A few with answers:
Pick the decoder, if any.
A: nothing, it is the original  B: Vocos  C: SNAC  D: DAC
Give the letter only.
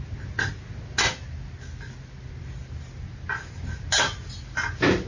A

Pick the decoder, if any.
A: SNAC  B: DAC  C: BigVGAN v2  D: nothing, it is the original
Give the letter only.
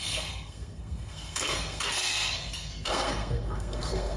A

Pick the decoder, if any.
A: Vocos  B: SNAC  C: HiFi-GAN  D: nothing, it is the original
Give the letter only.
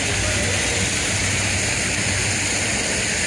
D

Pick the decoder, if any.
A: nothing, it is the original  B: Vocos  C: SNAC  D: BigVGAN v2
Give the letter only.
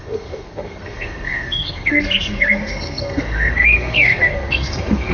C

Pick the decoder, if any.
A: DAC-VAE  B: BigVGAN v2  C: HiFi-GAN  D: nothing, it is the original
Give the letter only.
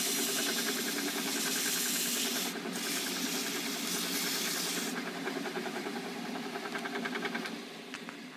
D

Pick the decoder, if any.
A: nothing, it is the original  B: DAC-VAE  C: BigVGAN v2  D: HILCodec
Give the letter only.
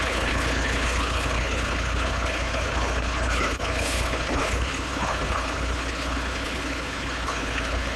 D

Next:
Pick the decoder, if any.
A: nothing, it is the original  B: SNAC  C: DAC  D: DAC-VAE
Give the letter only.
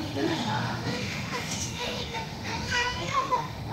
D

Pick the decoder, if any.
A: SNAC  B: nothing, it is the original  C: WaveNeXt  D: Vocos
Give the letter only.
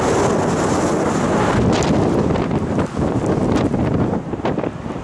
B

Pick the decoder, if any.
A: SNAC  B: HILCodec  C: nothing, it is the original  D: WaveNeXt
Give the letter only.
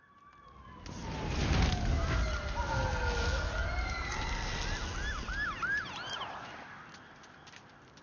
C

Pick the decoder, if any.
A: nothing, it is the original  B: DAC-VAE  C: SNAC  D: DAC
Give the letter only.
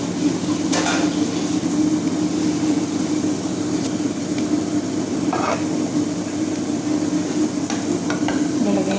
A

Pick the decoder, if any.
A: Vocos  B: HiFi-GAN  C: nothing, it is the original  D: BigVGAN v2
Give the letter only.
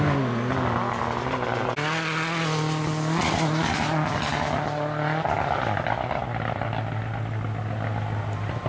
C